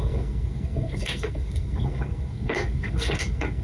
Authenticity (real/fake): fake